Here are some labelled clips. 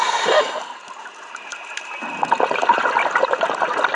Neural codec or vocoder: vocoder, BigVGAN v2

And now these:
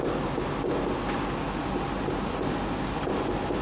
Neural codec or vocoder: none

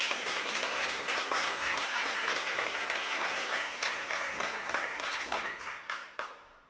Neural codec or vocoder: codec, SNAC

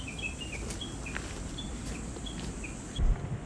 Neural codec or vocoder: vocoder, BigVGAN v2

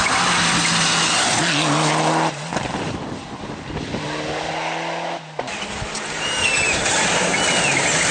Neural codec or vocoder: none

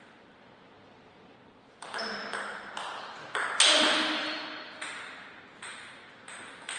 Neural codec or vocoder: none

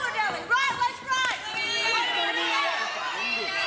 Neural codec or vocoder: none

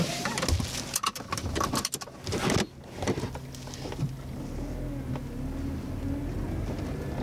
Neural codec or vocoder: none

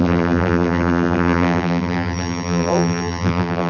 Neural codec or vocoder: vocoder, BigVGAN v2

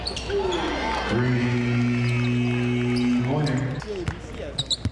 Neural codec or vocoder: none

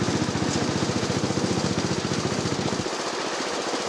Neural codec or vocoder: none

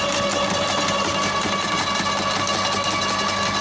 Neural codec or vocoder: none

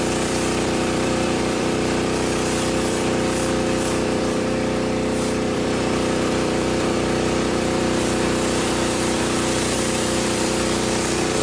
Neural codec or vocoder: vocoder, BigVGAN v2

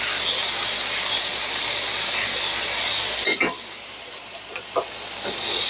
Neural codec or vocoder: none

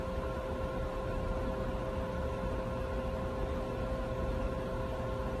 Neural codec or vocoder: none